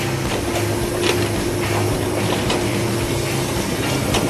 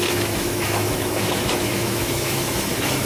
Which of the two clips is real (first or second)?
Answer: first